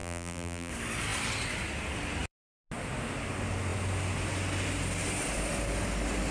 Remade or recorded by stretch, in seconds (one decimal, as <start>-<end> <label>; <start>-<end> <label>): 0.0-0.7 remade; 0.7-6.3 recorded